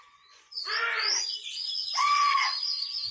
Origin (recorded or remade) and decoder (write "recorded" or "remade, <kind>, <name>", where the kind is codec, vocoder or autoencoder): remade, vocoder, Vocos